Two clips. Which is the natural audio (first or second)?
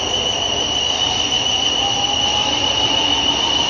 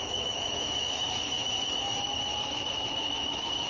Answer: first